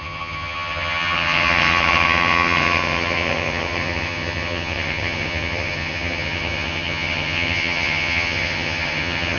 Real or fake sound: fake